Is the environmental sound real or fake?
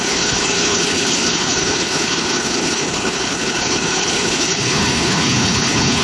fake